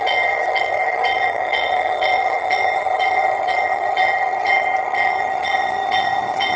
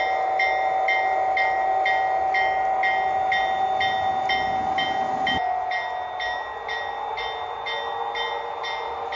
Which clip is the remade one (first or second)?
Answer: first